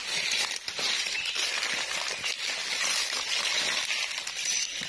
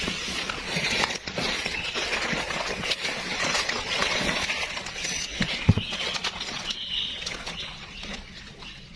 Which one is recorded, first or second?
first